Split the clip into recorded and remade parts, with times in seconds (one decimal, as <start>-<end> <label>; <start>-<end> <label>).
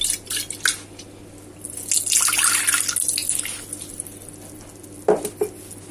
0.0-3.2 recorded; 3.2-5.3 remade; 5.3-5.9 recorded